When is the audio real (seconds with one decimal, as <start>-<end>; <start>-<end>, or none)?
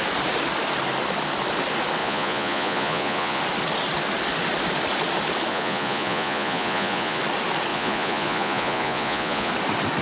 0.0-2.0; 3.4-5.5; 7.2-7.7; 9.5-10.0